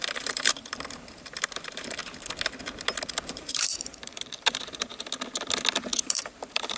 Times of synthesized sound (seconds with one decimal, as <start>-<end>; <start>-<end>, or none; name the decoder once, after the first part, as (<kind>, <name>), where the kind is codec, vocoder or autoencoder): 0.0-2.0 (vocoder, BigVGAN v2); 3.1-4.9; 6.1-6.8